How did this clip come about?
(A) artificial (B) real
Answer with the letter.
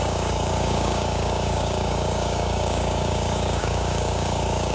A